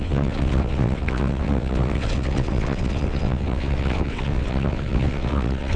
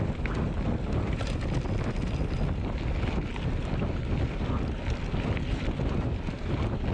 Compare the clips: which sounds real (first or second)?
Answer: second